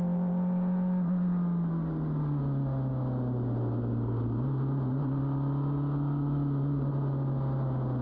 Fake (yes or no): no